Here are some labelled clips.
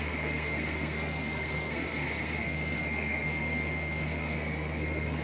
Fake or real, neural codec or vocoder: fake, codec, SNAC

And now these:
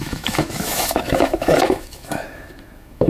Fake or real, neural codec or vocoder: fake, autoencoder, DAC-VAE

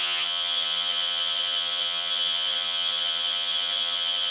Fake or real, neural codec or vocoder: fake, vocoder, HiFi-GAN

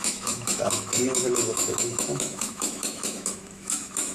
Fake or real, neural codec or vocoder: fake, autoencoder, DAC-VAE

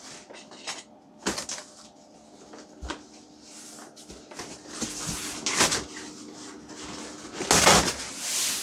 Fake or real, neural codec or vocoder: real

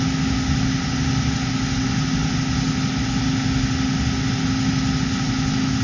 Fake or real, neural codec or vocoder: real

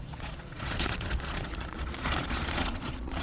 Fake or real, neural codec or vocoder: fake, vocoder, Vocos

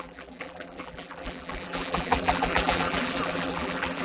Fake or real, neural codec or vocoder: fake, vocoder, BigVGAN v2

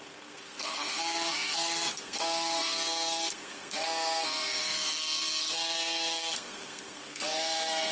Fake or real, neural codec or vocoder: fake, codec, SNAC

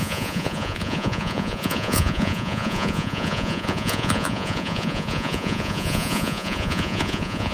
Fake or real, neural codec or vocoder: fake, vocoder, Vocos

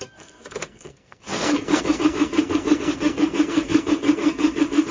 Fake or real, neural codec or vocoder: fake, codec, SNAC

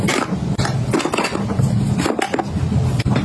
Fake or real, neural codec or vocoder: real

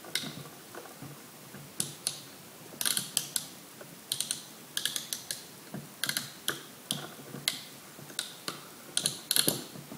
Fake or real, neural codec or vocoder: real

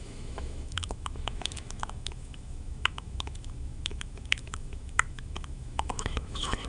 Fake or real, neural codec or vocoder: fake, autoencoder, DAC-VAE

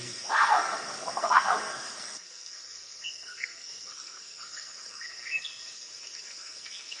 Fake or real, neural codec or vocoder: fake, codec, SNAC